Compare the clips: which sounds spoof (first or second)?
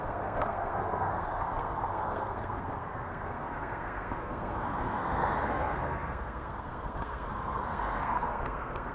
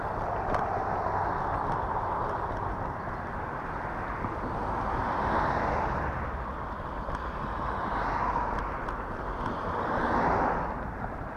first